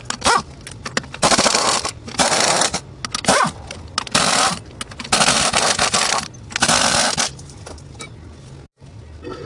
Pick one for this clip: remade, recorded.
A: recorded